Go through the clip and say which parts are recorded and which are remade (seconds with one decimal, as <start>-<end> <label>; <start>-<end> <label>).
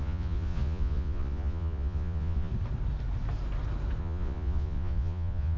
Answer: 0.0-2.5 remade; 2.5-4.0 recorded; 4.0-5.6 remade